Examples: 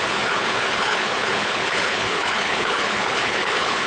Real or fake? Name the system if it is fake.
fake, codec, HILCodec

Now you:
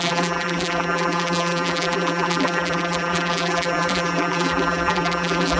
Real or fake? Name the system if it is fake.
fake, vocoder, BigVGAN v2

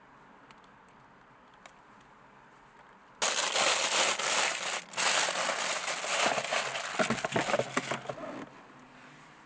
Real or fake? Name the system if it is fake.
real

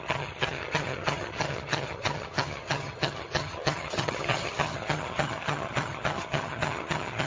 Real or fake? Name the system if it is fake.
fake, vocoder, HiFi-GAN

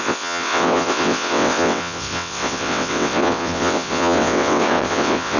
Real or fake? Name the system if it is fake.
fake, vocoder, WaveNeXt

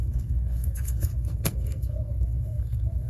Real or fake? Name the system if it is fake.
fake, codec, SNAC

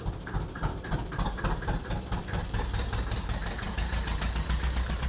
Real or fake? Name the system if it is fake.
fake, vocoder, BigVGAN v2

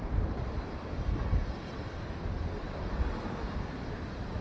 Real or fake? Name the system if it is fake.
real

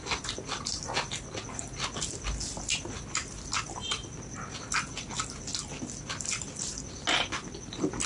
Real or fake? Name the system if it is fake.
real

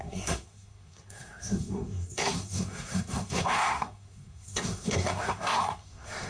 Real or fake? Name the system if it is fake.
fake, codec, SNAC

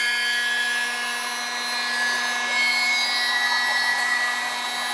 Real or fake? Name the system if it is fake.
real